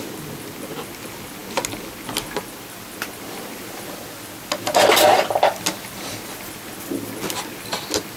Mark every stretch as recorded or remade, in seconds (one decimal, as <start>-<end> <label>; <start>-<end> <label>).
0.0-8.2 recorded